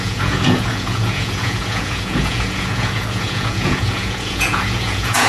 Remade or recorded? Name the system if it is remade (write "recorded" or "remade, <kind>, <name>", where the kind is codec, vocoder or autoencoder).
remade, vocoder, Vocos